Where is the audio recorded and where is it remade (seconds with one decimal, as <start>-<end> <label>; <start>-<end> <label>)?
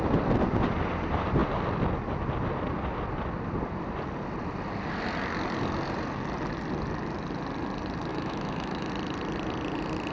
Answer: 0.0-8.1 recorded; 8.1-8.9 remade; 8.9-10.1 recorded